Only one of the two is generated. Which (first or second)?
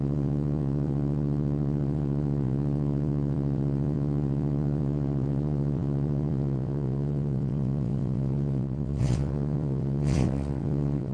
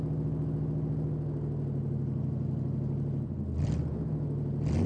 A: first